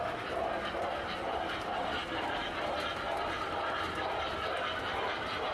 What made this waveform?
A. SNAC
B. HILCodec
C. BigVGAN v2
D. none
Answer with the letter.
D